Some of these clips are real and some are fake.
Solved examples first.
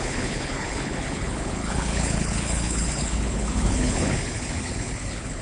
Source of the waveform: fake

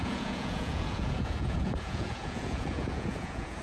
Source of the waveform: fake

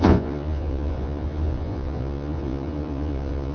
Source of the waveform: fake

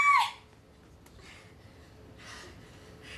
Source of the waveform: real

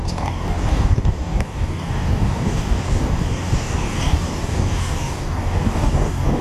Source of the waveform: fake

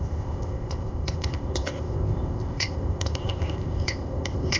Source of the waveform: fake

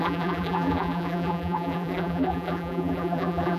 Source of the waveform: fake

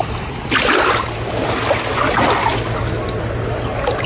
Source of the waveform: real